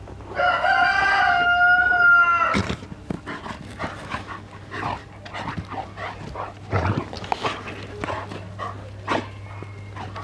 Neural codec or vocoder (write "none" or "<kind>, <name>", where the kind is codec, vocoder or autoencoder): none